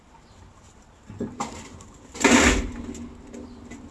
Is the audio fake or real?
real